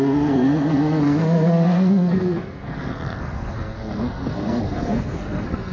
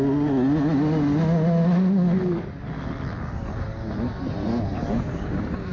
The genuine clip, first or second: second